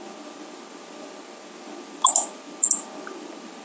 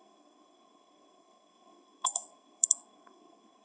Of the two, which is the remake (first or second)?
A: second